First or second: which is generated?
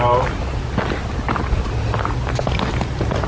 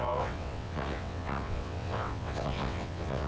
second